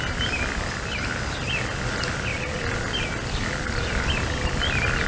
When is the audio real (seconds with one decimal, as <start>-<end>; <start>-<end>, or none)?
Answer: 0.0-5.1